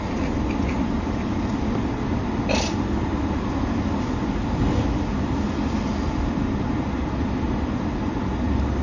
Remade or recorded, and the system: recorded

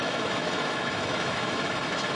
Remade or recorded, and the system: remade, autoencoder, DAC-VAE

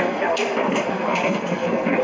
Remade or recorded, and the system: remade, codec, SNAC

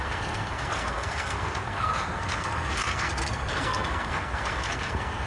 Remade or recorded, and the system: remade, codec, SNAC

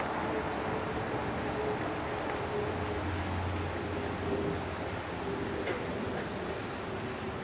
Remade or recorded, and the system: recorded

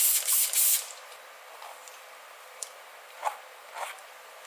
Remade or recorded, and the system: remade, vocoder, BigVGAN v2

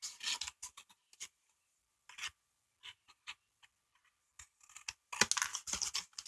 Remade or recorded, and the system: recorded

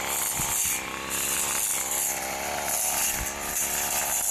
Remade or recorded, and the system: recorded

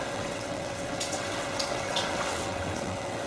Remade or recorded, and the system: remade, vocoder, WaveNeXt